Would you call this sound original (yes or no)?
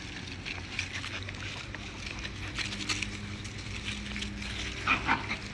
yes